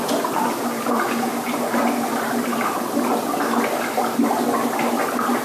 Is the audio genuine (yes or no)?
yes